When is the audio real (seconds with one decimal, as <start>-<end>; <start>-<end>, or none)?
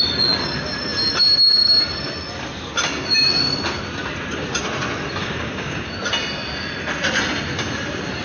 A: 0.0-5.2; 5.9-8.2